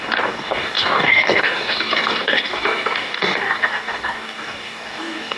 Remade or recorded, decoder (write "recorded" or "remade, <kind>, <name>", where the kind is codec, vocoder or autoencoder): remade, codec, DAC